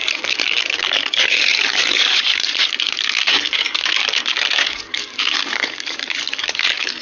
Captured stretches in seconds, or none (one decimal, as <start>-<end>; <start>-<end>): none